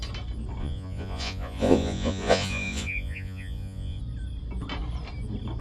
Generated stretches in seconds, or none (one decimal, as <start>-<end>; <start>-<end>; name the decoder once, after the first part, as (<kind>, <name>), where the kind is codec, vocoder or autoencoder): 0.6-4.0 (vocoder, Vocos)